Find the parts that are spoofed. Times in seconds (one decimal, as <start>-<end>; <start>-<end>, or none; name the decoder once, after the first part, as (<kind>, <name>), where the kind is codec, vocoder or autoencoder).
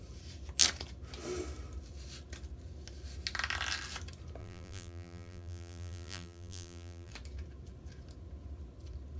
4.4-7.1 (vocoder, BigVGAN v2)